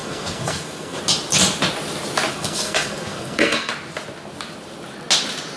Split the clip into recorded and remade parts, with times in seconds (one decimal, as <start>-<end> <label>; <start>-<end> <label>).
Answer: 0.0-1.0 remade; 1.0-2.3 recorded; 2.3-3.7 remade; 3.7-5.6 recorded